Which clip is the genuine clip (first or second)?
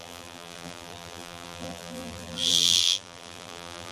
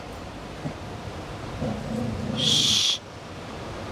second